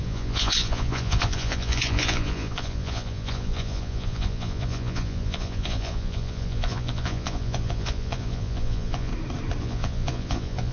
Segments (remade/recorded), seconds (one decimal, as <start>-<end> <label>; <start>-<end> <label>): 0.0-9.1 remade; 9.1-9.6 recorded; 9.6-10.7 remade